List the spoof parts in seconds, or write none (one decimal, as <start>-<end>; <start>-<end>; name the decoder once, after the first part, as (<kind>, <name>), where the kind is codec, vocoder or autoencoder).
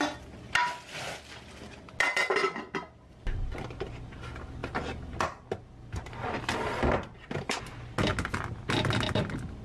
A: none